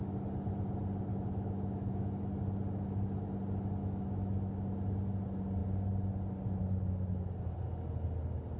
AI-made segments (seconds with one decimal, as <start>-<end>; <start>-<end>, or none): 1.1-2.2; 3.8-4.5